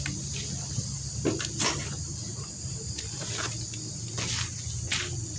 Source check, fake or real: real